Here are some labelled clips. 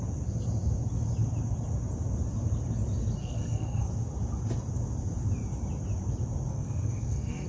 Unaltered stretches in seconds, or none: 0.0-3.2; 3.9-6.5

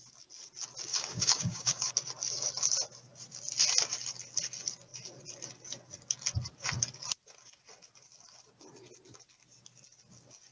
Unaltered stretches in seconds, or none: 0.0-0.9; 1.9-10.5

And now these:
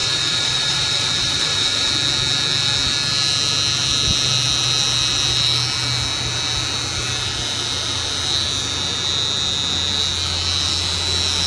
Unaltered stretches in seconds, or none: 1.9-11.5